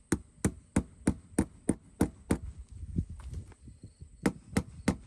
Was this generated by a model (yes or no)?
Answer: no